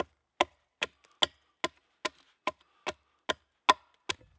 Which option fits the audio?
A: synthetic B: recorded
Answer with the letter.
B